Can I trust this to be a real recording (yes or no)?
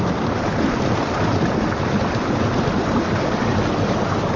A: no